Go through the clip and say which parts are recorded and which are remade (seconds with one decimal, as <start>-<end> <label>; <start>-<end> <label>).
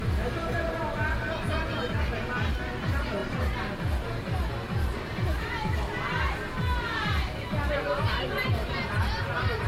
0.0-9.7 recorded